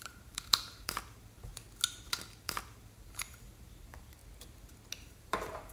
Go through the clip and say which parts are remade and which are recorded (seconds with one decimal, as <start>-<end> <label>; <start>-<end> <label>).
0.0-1.5 remade; 1.5-2.4 recorded; 2.4-4.2 remade; 4.2-5.1 recorded; 5.1-5.7 remade